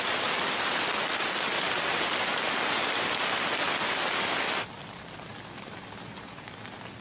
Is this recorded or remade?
recorded